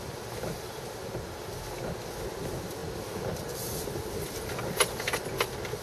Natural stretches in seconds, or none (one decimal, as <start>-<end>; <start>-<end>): 0.0-5.8